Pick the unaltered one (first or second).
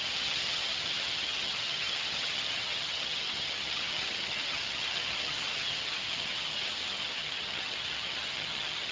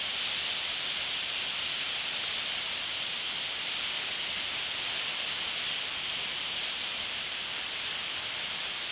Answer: second